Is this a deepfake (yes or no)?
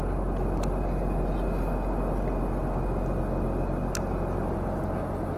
no